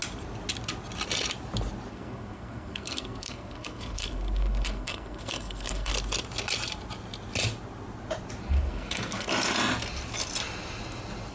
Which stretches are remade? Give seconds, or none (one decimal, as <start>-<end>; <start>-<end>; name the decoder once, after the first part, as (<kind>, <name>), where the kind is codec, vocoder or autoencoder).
1.9-5.9 (codec, SNAC); 8.5-9.3